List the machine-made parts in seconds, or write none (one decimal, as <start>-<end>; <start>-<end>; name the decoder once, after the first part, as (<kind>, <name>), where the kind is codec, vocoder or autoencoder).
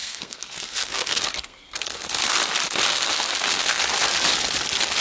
0.0-2.4 (codec, SNAC); 2.9-3.8